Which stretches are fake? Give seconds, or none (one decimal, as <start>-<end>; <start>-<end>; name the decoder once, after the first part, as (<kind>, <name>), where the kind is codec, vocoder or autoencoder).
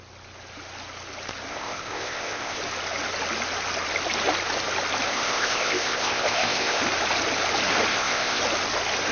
1.5-2.6 (codec, ZipCodec); 5.1-6.8; 7.9-8.4